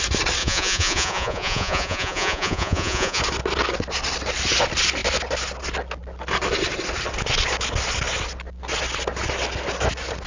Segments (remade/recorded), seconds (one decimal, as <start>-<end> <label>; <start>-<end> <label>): 0.0-0.4 recorded; 0.4-3.2 remade; 3.2-10.3 recorded